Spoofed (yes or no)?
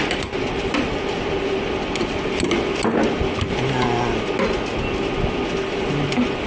no